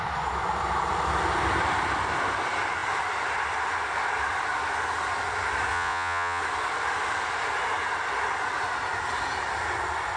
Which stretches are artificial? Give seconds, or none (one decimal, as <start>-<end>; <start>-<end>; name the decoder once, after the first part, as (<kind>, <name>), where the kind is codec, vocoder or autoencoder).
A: 5.7-6.4 (vocoder, Vocos)